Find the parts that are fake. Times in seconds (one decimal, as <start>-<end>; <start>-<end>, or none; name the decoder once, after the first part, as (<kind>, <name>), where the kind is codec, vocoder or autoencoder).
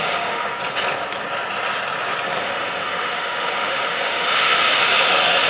0.0-0.5 (autoencoder, DAC-VAE); 2.4-5.5